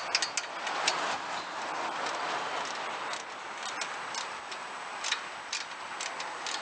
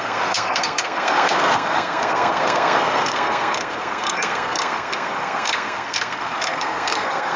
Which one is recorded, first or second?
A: first